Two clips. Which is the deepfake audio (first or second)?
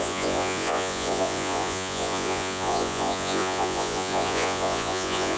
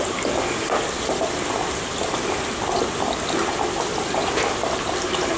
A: first